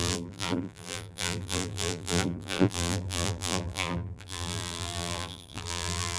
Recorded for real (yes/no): no